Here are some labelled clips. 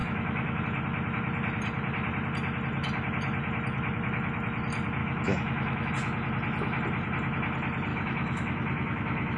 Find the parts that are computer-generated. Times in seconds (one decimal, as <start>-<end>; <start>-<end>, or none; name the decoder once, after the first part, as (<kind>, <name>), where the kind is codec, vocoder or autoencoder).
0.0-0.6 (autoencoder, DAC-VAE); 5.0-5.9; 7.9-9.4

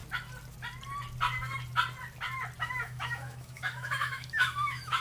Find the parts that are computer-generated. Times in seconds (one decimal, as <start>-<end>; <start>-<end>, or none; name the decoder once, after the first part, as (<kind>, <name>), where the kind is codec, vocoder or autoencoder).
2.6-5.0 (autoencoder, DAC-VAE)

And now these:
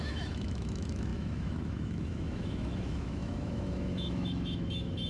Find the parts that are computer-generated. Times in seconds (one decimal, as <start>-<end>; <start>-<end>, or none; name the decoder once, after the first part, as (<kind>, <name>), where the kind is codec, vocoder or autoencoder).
0.0-5.1 (autoencoder, DAC-VAE)

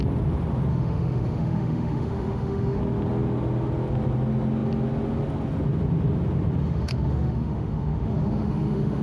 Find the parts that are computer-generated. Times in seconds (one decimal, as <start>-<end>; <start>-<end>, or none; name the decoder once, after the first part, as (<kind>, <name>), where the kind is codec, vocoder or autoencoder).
0.7-2.8 (autoencoder, DAC-VAE); 6.6-9.0

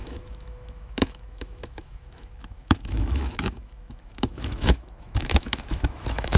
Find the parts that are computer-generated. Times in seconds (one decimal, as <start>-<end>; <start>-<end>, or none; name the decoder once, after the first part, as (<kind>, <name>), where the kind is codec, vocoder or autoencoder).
0.0-6.4 (autoencoder, DAC-VAE)